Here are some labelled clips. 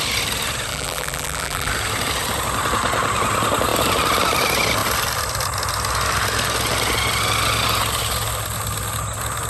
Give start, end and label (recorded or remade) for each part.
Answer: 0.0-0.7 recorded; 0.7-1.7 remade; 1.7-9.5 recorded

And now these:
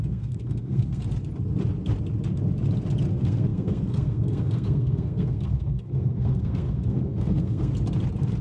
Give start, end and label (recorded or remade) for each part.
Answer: 0.0-1.0 remade; 1.0-3.1 recorded; 3.1-7.7 remade; 7.7-8.4 recorded